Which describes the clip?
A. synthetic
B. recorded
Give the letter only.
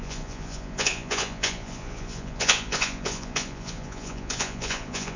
A